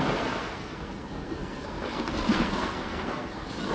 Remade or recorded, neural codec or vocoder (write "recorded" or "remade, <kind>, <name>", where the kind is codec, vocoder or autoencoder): remade, codec, SNAC